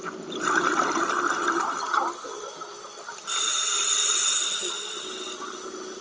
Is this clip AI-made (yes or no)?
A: no